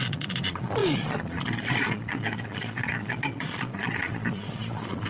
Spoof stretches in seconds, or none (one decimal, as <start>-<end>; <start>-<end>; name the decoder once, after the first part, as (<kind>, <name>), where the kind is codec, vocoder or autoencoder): 0.0-5.1 (vocoder, Vocos)